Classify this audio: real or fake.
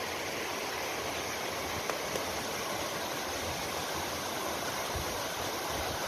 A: real